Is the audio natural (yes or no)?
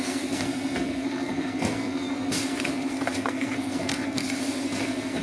no